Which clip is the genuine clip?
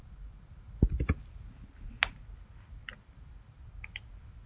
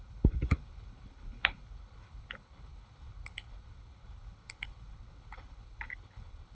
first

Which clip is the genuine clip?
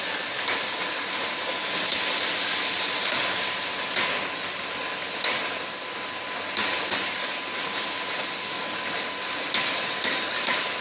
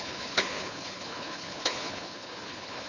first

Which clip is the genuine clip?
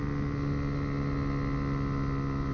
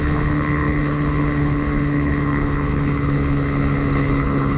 first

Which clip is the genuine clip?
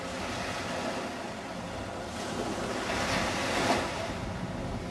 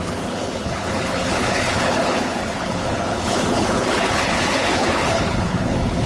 first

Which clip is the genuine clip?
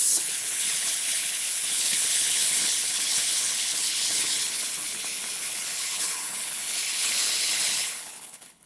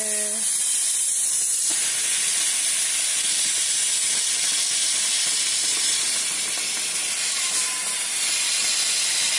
second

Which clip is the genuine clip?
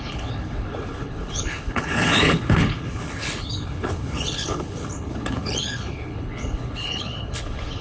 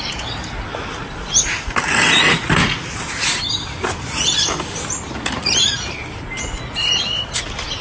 second